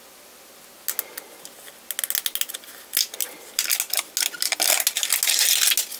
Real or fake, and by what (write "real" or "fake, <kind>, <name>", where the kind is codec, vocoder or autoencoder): real